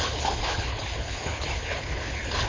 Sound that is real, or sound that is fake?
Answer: fake